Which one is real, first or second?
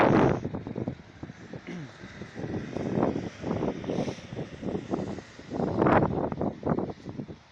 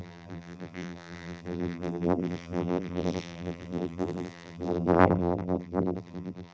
first